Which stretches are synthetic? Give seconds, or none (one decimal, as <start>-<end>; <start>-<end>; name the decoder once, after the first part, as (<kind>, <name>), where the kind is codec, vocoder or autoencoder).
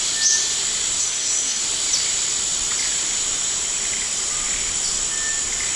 1.0-1.6 (codec, SNAC)